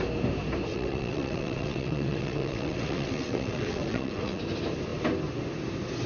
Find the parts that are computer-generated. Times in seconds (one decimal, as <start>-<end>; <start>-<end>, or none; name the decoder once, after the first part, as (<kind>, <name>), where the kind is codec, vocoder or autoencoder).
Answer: 0.7-4.4 (vocoder, WaveNeXt)